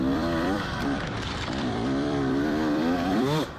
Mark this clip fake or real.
fake